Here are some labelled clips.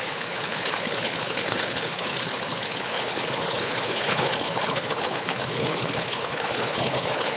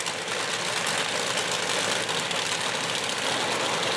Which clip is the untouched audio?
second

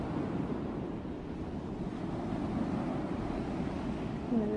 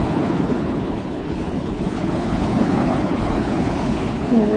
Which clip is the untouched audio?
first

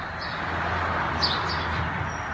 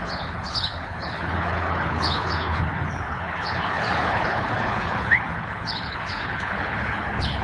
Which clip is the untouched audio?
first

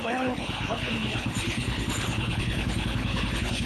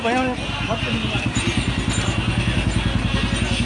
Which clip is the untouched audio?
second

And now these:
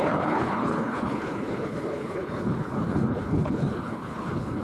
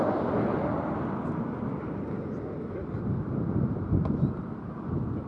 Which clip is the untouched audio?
second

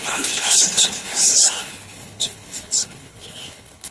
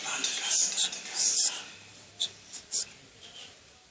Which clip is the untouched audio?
second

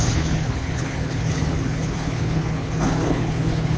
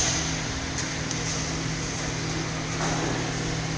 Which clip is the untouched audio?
second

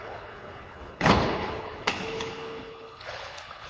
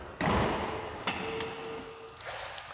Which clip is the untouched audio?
second